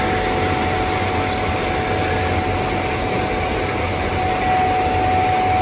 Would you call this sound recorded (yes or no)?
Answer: yes